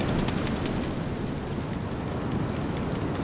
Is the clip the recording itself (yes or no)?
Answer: yes